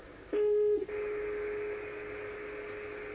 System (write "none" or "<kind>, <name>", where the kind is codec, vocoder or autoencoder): none